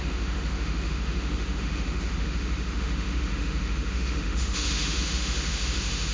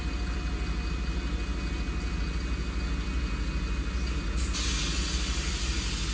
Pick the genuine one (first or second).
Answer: second